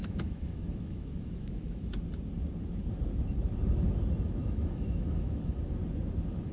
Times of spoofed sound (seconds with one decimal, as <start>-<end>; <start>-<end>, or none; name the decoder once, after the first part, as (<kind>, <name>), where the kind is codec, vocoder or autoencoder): 0.0-1.9 (autoencoder, DAC-VAE); 4.4-5.6